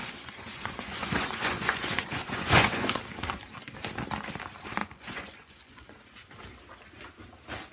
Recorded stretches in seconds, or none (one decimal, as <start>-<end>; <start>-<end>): 3.0-4.8; 6.0-7.7